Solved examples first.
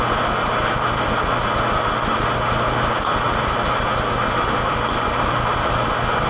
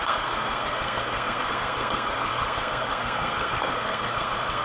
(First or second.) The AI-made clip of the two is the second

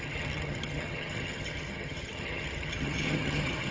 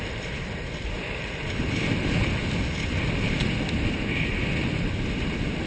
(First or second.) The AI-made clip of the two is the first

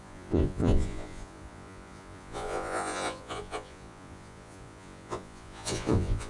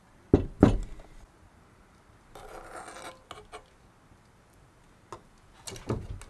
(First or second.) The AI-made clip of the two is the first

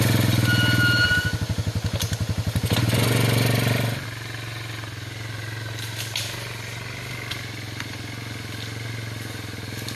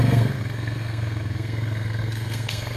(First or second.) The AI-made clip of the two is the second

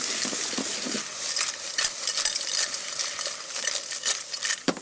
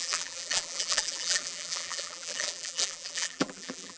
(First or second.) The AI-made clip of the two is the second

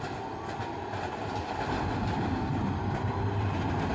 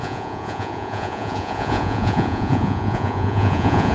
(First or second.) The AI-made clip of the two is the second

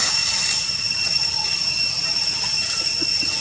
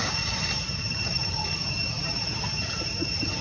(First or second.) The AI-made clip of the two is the second